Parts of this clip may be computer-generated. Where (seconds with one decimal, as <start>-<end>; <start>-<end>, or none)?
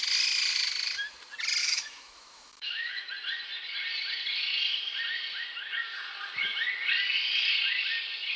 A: 1.6-3.1